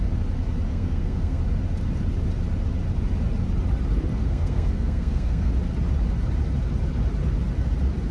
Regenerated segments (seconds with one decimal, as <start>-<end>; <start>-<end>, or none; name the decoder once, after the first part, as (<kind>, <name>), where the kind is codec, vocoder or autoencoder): 0.7-1.4 (codec, SNAC); 4.1-5.5